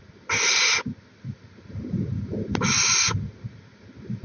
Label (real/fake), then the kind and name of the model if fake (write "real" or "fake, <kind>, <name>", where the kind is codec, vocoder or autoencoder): real